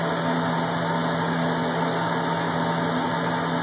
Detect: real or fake real